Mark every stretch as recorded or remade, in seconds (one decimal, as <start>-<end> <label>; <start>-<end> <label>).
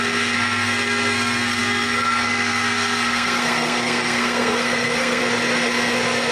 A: 0.0-5.2 remade; 5.2-6.3 recorded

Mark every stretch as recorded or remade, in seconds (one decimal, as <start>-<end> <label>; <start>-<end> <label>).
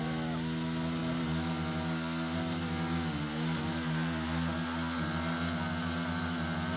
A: 0.0-6.8 recorded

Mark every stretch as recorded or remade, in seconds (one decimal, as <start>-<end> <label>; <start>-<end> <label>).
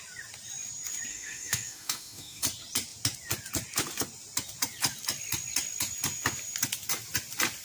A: 0.0-1.1 recorded; 1.1-2.4 remade; 2.4-7.6 recorded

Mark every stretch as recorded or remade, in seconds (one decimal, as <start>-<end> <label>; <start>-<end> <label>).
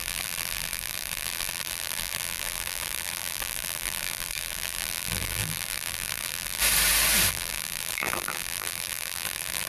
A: 0.0-6.6 remade; 6.6-7.3 recorded; 7.3-9.7 remade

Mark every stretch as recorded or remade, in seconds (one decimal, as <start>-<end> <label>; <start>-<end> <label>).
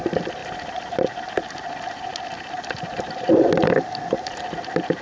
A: 0.0-5.0 recorded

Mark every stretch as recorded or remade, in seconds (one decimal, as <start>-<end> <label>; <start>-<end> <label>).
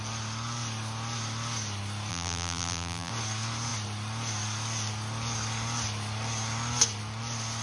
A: 0.0-2.1 recorded; 2.1-3.1 remade; 3.1-7.6 recorded